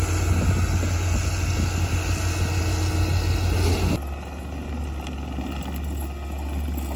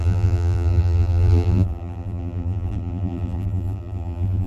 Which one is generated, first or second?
second